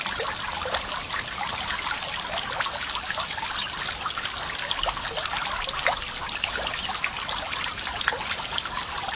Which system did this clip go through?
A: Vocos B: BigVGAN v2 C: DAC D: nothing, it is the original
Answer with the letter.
D